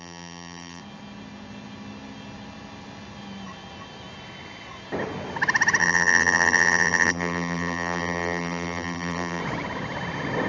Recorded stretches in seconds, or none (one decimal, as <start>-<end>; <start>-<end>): 0.8-5.8; 9.4-10.5